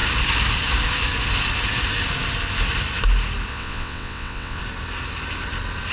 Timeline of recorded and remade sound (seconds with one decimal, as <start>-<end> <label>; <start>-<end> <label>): 0.0-3.5 recorded; 3.5-4.6 remade; 4.6-5.9 recorded